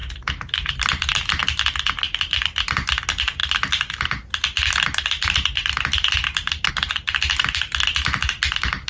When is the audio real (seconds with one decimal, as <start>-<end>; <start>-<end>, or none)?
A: 0.0-0.7; 1.4-3.0; 3.4-6.7